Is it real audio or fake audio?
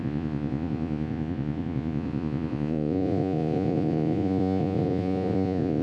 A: fake